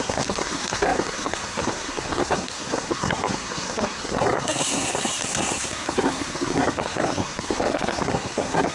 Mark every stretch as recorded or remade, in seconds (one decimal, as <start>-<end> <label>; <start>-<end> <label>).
0.0-8.7 remade